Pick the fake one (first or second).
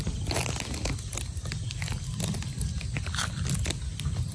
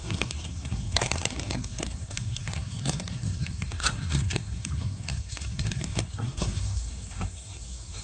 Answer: second